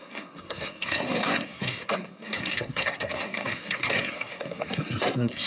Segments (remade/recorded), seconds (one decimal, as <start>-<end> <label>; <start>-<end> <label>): 0.0-5.5 remade